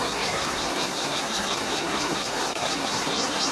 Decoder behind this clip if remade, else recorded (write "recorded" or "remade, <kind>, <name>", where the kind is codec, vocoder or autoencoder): remade, codec, SNAC